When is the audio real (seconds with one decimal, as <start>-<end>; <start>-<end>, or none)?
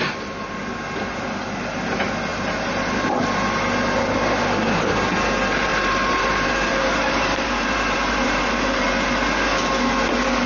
0.0-2.3; 2.9-5.7; 9.1-10.5